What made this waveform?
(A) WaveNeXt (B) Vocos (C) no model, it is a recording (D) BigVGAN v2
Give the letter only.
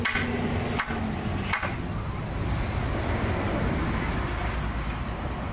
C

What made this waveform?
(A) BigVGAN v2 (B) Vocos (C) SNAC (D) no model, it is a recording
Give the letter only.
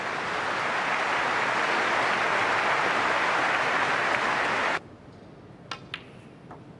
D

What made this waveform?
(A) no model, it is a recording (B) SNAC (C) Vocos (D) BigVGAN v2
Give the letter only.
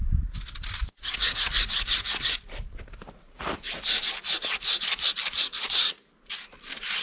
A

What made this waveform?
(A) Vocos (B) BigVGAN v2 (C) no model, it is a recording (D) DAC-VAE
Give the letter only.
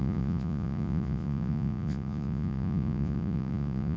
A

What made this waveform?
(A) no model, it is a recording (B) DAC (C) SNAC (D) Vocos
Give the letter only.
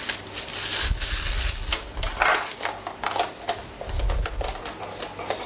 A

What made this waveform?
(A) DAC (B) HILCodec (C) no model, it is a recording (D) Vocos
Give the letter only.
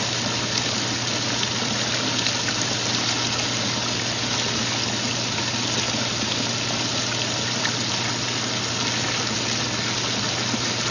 C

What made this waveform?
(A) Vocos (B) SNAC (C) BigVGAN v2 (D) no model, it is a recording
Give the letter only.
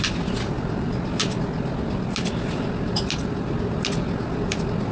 D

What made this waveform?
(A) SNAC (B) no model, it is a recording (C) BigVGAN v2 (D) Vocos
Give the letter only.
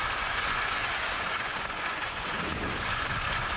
D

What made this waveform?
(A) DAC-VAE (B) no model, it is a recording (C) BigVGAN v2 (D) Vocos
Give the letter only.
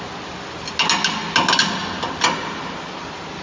B